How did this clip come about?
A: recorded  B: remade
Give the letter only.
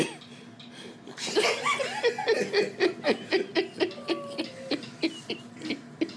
A